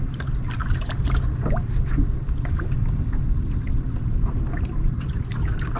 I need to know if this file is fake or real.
real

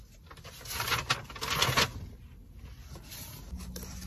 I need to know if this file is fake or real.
real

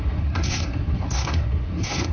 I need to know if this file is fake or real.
fake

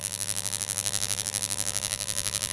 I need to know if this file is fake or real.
fake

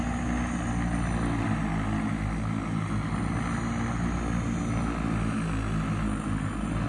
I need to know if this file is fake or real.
real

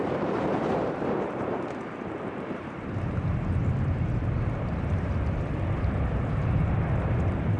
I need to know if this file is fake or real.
fake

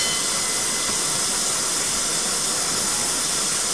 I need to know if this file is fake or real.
real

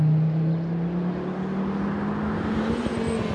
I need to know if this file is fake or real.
real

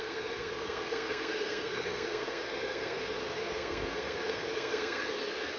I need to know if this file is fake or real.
fake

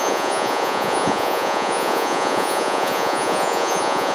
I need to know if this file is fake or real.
fake